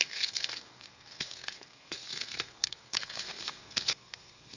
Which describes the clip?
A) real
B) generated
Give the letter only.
B